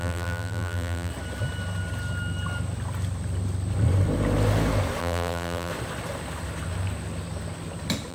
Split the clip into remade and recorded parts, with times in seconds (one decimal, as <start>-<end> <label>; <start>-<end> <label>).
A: 0.0-1.1 remade; 1.1-5.0 recorded; 5.0-5.7 remade; 5.7-8.1 recorded